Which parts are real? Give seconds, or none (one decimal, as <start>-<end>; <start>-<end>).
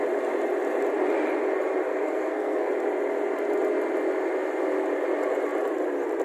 0.0-1.8; 2.7-6.2